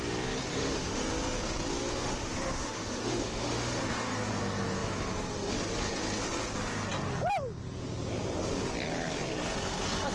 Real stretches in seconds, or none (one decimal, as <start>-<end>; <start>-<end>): 0.0-0.5; 1.0-1.9; 3.9-10.1

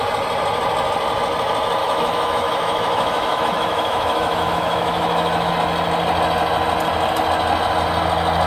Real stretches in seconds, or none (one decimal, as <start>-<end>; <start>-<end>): 0.0-1.8; 5.5-8.5

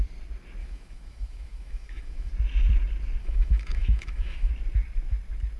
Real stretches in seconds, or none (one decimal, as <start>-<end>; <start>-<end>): 0.0-0.6; 2.3-3.2; 4.5-5.6

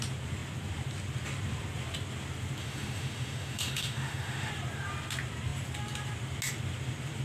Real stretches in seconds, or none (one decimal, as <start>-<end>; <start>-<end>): 0.0-2.6; 4.5-7.2

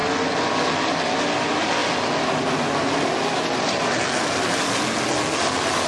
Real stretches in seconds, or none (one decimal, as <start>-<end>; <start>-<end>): 0.0-5.9

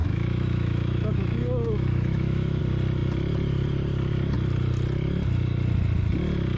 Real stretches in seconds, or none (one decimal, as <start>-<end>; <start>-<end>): 2.6-6.6

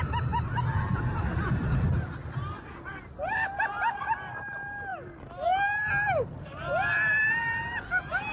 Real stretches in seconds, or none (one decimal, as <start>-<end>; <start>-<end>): 0.0-8.3